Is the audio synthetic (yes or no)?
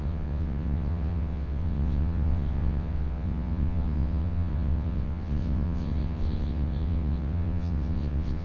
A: yes